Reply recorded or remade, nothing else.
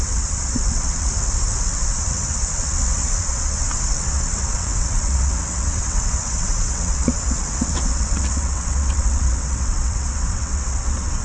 remade